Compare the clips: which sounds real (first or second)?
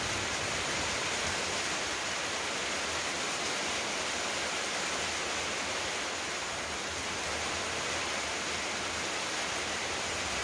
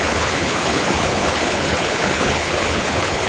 first